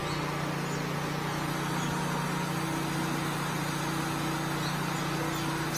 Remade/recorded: recorded